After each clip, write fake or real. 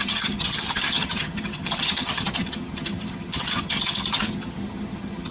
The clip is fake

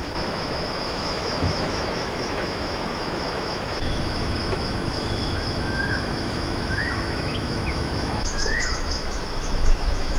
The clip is fake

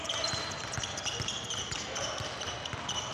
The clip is real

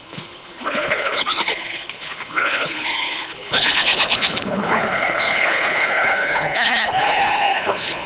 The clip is fake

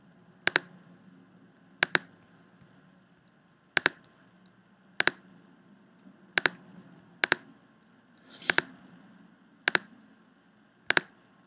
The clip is real